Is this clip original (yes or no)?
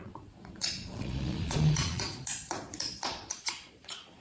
no